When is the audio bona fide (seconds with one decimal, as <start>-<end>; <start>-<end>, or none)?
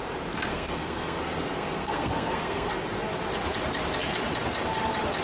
0.0-0.5; 2.7-5.2